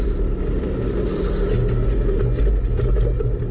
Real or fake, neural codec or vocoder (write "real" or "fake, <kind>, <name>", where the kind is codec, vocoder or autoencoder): real